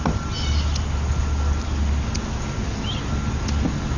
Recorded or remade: recorded